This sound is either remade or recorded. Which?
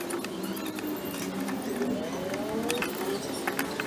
recorded